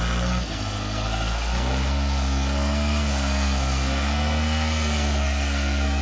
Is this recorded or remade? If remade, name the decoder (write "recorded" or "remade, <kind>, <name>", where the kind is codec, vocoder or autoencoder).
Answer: remade, codec, SNAC